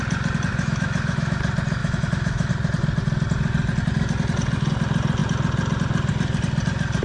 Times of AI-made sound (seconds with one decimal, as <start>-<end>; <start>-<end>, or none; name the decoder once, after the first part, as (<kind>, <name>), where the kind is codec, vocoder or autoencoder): 0.5-1.4 (autoencoder, DAC-VAE); 1.8-2.5